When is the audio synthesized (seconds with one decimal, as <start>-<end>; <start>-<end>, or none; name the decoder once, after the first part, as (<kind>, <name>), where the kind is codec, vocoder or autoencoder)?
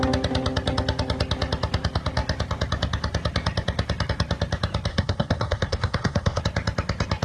4.9-6.4 (codec, SNAC)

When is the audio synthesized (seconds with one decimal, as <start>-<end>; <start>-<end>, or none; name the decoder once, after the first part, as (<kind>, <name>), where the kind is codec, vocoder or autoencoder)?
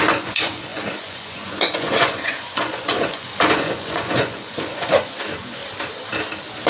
0.0-5.6 (vocoder, Vocos)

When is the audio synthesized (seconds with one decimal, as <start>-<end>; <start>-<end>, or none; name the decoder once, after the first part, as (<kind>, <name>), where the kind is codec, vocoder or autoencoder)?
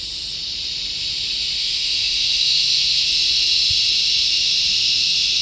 1.6-3.1 (autoencoder, DAC-VAE); 4.7-5.4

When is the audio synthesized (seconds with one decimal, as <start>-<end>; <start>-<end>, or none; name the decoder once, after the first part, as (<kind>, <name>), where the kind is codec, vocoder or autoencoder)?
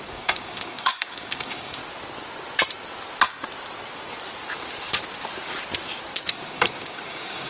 0.0-1.8 (codec, DAC); 6.3-7.5